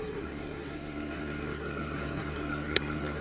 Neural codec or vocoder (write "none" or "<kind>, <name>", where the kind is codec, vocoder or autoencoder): codec, SNAC